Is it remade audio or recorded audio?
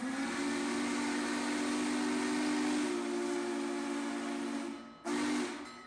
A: recorded